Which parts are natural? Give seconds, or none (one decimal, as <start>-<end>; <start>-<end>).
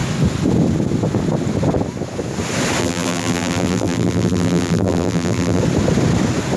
0.0-2.8; 5.6-6.6